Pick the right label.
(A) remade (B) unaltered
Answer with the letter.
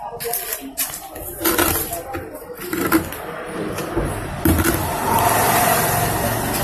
B